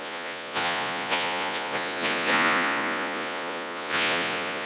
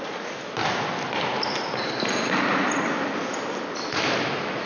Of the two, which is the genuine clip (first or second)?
second